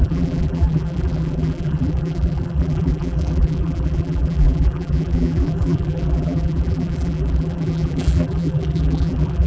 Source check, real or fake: fake